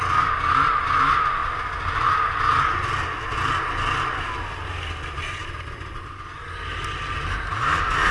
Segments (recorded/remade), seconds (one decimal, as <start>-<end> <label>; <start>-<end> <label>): 0.0-8.1 recorded